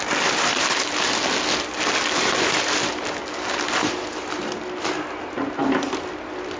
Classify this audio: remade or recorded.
recorded